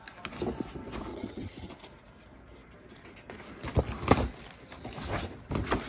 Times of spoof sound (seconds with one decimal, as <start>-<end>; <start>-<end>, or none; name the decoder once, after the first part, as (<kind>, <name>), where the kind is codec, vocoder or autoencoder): 1.1-1.7 (vocoder, HiFi-GAN)